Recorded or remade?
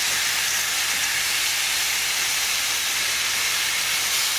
recorded